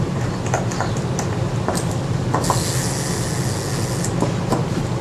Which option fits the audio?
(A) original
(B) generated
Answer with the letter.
A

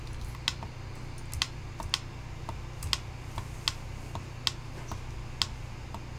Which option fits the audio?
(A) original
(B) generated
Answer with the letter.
A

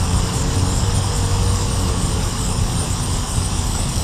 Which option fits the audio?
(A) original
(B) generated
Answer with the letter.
B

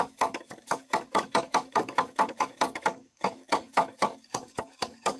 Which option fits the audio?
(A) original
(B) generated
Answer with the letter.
B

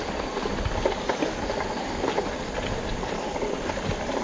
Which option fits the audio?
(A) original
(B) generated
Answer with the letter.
A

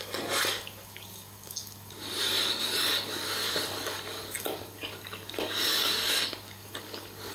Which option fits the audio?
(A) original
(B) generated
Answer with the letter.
B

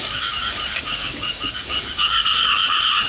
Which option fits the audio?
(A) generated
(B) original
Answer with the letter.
A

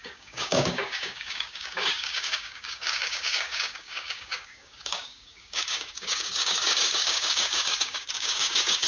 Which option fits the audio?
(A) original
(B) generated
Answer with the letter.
B